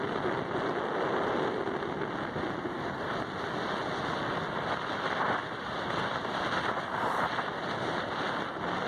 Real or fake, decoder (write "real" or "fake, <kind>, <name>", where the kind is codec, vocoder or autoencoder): real